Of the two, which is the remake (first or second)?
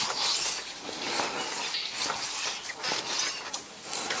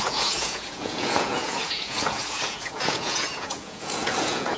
second